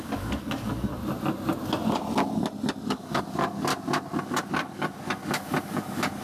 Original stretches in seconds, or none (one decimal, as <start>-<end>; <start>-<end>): 0.9-2.9; 3.7-4.2